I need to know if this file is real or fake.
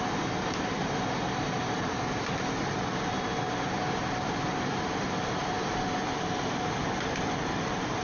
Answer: real